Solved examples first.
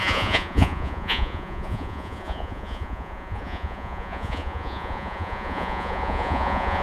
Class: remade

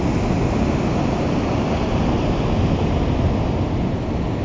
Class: recorded